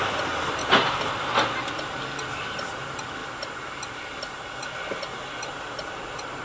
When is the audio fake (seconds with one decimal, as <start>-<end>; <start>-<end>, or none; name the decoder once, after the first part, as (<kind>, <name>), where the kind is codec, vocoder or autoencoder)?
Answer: 0.6-1.1 (vocoder, BigVGAN v2)